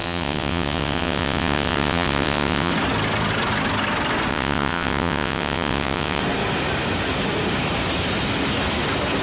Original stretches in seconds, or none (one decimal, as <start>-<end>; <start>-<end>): 2.7-4.3; 6.2-9.2